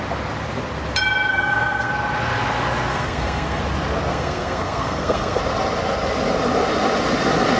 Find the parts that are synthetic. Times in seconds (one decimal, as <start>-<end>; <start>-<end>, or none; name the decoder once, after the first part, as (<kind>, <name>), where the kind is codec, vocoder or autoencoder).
1.3-1.9 (codec, SNAC); 2.9-3.6; 4.1-5.4